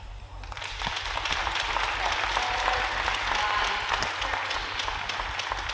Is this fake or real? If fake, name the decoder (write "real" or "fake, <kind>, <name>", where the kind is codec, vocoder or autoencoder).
real